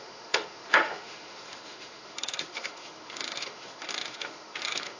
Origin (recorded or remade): remade